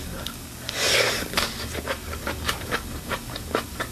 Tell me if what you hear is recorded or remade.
remade